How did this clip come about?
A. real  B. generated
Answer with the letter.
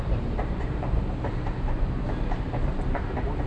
B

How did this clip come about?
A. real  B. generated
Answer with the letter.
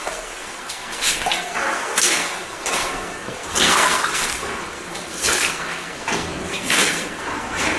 B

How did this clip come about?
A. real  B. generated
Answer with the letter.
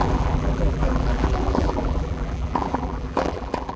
B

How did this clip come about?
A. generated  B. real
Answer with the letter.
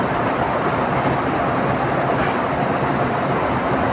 B